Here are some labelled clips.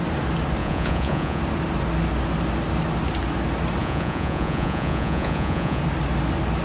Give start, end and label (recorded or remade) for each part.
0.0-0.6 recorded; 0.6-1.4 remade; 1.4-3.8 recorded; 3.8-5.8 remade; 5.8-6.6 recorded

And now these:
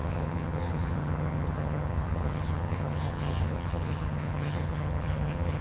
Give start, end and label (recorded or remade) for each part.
0.0-5.6 remade

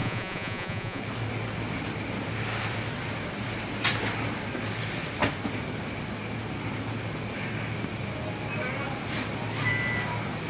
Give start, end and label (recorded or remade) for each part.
0.0-1.0 remade; 1.0-10.5 recorded